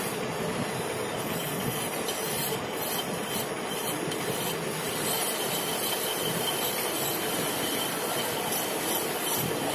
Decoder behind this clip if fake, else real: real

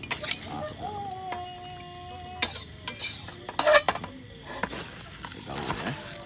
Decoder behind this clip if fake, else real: real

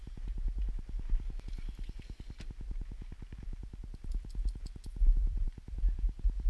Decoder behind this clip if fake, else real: real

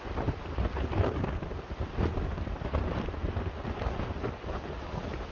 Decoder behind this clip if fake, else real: real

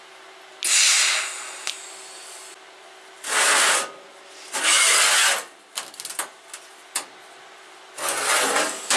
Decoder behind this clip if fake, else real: real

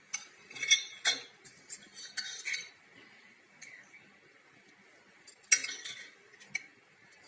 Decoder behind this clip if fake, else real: real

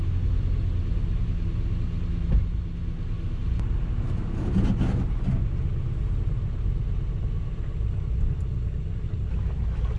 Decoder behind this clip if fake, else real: real